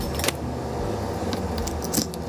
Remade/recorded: recorded